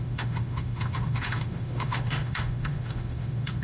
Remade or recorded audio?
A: remade